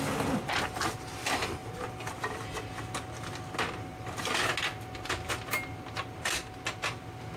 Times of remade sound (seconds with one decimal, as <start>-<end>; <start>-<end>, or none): none